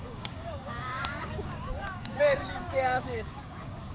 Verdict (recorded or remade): remade